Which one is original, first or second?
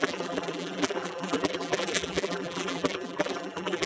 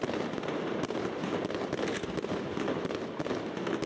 second